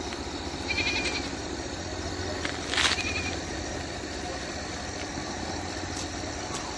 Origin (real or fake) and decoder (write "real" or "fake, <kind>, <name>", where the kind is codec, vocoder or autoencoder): real